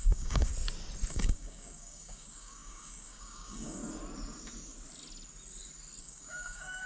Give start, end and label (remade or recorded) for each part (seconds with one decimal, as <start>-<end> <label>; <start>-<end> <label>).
0.0-0.5 remade; 0.5-1.1 recorded; 1.1-3.8 remade; 3.8-6.0 recorded; 6.0-6.9 remade